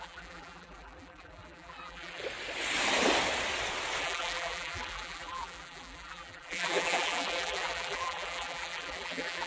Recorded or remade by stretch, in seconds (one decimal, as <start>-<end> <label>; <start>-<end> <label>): 0.0-2.2 remade; 2.2-4.0 recorded; 4.0-9.5 remade